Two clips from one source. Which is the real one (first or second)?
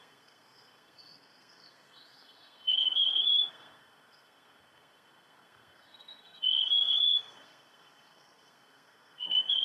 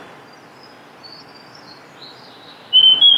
second